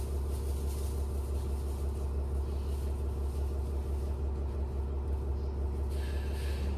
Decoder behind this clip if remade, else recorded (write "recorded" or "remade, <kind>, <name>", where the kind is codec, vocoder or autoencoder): recorded